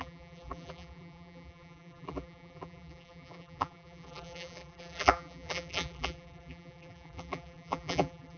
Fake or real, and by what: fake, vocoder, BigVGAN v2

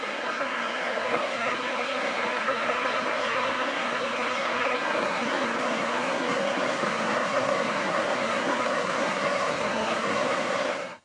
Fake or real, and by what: fake, codec, SNAC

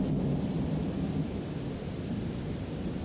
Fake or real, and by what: real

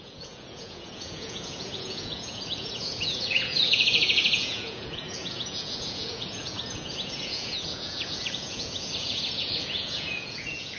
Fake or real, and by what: fake, vocoder, Vocos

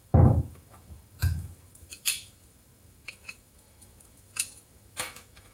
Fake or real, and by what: fake, autoencoder, DAC-VAE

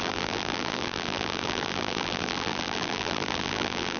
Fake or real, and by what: fake, vocoder, BigVGAN v2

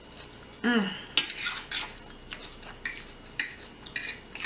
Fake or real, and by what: real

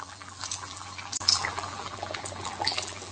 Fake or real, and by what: fake, vocoder, BigVGAN v2